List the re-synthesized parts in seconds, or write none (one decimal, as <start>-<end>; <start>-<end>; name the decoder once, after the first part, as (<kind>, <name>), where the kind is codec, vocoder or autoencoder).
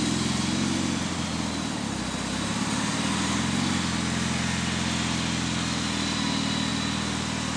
none